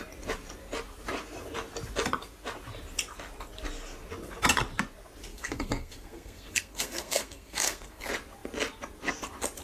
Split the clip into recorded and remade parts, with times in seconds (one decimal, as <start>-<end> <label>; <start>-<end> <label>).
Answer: 0.0-5.3 recorded; 5.3-8.0 remade; 8.0-9.6 recorded